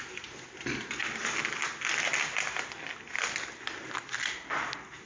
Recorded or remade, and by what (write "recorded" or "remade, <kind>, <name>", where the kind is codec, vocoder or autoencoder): recorded